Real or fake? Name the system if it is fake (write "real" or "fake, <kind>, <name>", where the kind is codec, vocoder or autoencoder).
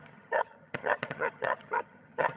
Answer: fake, vocoder, HiFi-GAN